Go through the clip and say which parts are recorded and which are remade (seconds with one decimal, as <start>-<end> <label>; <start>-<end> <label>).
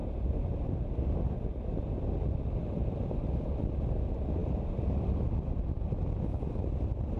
0.0-7.2 recorded